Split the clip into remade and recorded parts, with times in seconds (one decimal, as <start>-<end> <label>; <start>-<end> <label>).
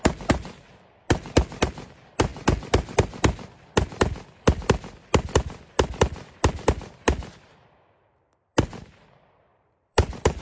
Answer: 0.0-9.5 recorded; 9.5-10.4 remade